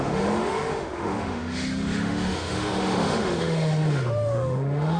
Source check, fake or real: fake